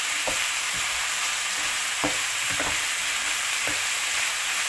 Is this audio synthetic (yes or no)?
yes